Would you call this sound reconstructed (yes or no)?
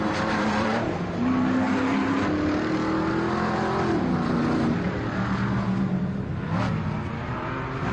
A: yes